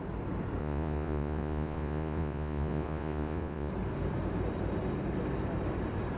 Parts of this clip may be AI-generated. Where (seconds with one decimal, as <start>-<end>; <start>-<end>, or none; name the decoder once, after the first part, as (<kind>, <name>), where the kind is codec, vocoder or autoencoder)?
0.6-3.7 (vocoder, Vocos)